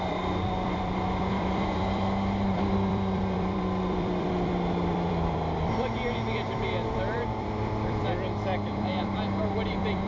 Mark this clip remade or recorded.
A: remade